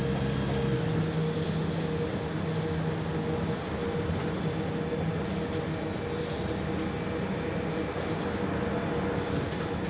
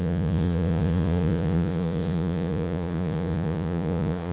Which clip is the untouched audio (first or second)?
first